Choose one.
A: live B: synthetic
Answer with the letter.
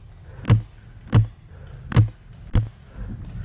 A